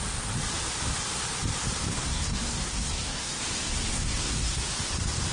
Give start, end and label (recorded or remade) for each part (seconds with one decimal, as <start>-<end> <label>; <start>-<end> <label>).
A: 0.0-1.9 recorded; 1.9-3.4 remade; 3.4-3.9 recorded; 3.9-4.6 remade; 4.6-5.3 recorded